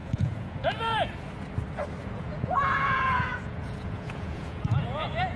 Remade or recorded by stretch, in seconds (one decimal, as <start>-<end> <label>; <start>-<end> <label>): 0.0-1.1 remade; 1.1-2.0 recorded; 2.0-5.4 remade